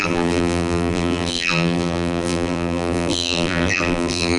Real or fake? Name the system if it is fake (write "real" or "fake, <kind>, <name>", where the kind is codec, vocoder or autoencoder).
fake, vocoder, BigVGAN v2